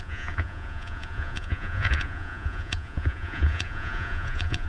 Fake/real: fake